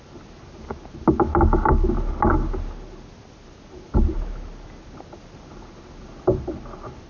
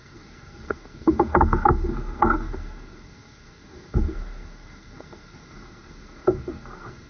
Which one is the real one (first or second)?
first